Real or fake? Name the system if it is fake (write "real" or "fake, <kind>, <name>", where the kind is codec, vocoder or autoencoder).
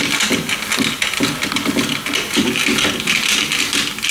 real